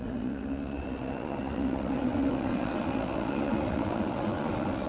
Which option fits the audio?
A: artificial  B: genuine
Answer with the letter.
A